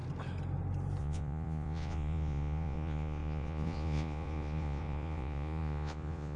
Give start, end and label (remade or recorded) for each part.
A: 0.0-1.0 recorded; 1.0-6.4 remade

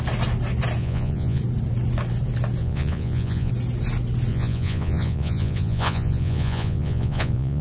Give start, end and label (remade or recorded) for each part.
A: 0.0-0.8 recorded; 0.8-1.4 remade; 1.4-2.6 recorded; 2.6-3.5 remade; 3.5-4.3 recorded; 4.3-7.6 remade

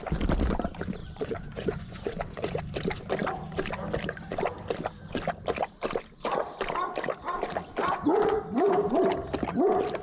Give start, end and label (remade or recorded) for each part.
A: 0.0-1.0 recorded; 1.0-2.6 remade; 2.6-7.8 recorded; 7.8-8.4 remade; 8.4-10.0 recorded

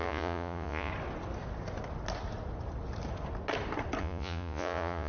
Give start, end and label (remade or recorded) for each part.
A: 0.0-0.9 remade; 0.9-4.0 recorded; 4.0-5.1 remade

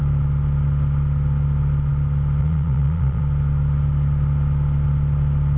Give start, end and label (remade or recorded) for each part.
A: 0.0-2.4 recorded; 2.4-3.2 remade; 3.2-5.6 recorded

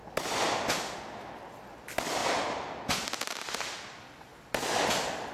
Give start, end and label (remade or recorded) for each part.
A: 0.0-5.3 recorded

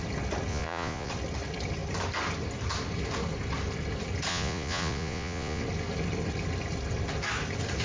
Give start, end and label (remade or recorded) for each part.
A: 0.0-0.5 recorded; 0.5-1.1 remade; 1.1-4.3 recorded; 4.3-5.6 remade; 5.6-7.8 recorded